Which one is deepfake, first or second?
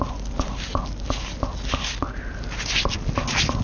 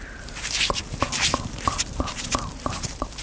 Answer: second